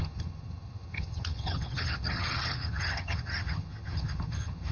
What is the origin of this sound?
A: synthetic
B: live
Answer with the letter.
A